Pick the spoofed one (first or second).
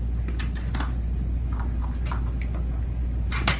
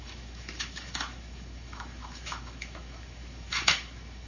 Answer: second